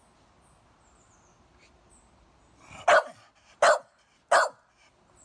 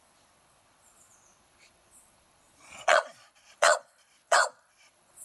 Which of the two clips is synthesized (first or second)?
second